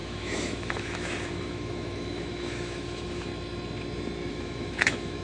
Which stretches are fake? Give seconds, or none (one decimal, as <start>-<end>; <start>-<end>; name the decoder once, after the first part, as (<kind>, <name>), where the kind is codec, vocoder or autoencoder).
0.0-3.3 (autoencoder, DAC-VAE); 4.3-5.2